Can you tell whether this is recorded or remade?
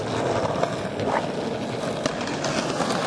recorded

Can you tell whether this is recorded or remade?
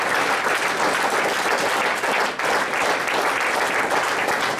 recorded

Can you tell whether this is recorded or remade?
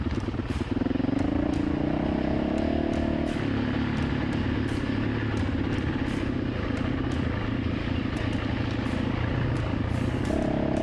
recorded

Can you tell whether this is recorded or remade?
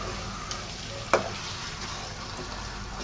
recorded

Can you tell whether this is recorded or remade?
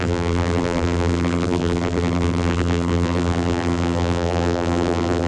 remade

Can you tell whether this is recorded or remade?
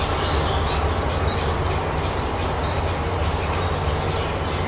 recorded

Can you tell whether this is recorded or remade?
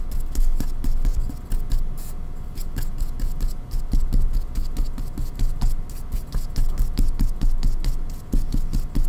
recorded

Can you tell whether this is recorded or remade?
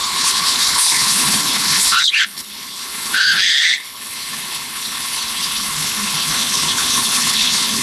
remade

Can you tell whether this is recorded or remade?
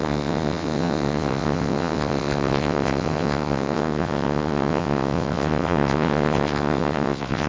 remade